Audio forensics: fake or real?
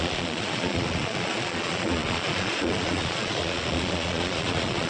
fake